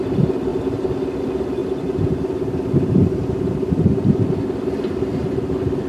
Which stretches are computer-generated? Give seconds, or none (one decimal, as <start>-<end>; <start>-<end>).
0.0-0.5; 1.2-1.6; 3.5-5.2